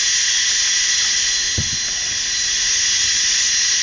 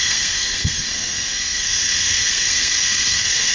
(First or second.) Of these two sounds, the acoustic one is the first